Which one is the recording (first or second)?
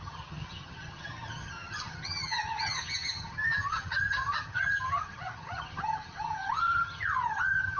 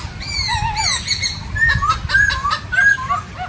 second